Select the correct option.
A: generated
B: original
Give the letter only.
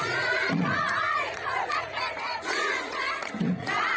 A